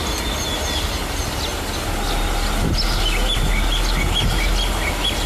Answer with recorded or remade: recorded